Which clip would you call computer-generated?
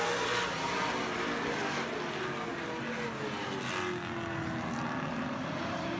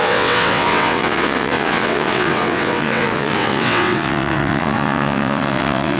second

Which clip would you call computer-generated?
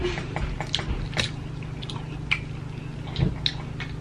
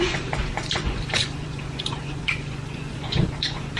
second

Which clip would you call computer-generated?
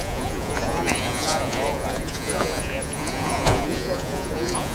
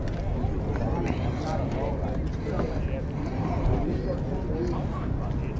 first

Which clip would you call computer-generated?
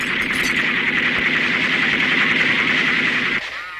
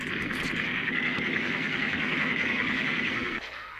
second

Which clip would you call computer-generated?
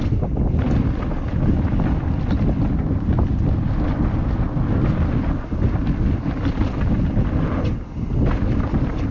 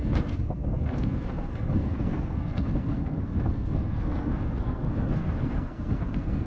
second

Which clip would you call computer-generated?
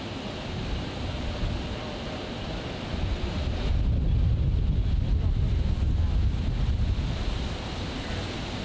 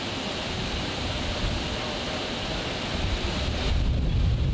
second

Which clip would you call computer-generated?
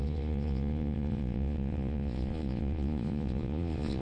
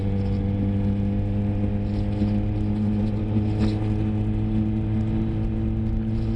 first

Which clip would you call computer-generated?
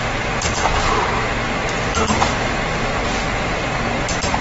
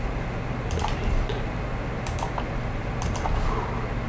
first